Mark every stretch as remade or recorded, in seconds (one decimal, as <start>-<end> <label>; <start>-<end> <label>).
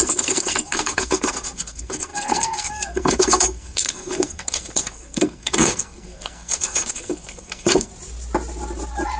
0.0-7.9 remade; 7.9-9.2 recorded